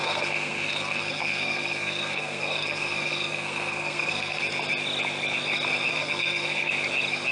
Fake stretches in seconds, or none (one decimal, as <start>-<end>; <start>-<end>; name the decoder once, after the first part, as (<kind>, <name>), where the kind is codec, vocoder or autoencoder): 0.0-4.4 (codec, SNAC); 5.9-6.7